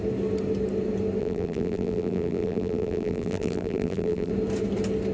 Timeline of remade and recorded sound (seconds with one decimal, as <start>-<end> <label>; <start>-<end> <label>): 0.0-1.2 recorded; 1.2-4.3 remade; 4.3-5.1 recorded